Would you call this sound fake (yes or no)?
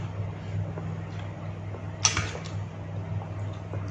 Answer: no